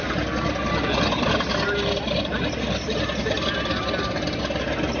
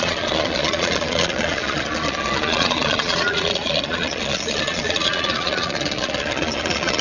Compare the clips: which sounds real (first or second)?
first